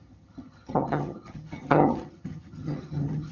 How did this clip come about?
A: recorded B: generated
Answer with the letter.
B